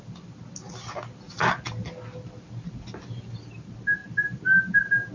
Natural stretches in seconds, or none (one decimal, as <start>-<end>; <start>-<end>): 0.0-5.1